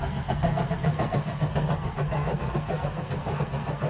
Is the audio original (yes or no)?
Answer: no